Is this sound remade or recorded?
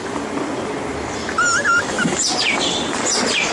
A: recorded